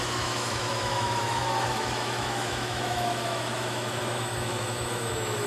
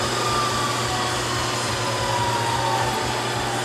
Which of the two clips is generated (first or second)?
first